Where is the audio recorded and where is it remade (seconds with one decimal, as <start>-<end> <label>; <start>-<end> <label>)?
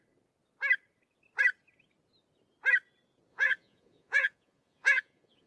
0.0-3.3 recorded; 3.3-5.5 remade